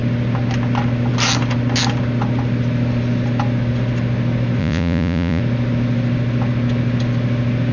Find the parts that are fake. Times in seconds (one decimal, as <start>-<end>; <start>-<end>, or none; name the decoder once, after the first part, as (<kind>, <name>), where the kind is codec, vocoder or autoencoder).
4.6-5.4 (vocoder, Vocos)